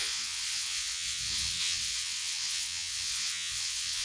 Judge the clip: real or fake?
fake